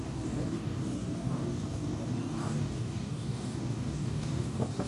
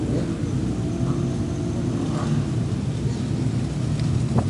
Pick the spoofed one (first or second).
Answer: first